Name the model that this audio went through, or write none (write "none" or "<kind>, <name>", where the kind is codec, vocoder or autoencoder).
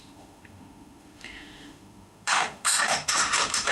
autoencoder, DAC-VAE